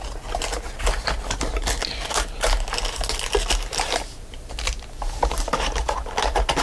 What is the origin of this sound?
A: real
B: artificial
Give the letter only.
A